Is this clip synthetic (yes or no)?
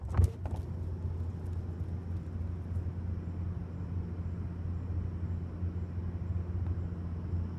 no